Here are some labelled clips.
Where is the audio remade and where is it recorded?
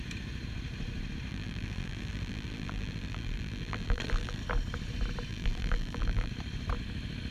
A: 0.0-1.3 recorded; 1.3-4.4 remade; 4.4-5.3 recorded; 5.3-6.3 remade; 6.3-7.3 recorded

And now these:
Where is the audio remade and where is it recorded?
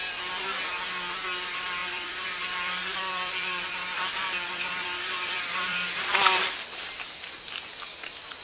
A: 0.0-1.8 recorded; 1.8-6.8 remade; 6.8-8.4 recorded